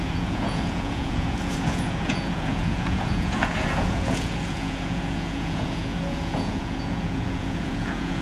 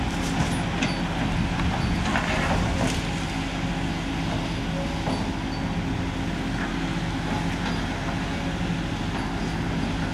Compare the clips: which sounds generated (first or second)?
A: first